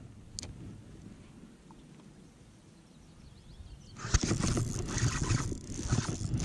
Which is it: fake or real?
real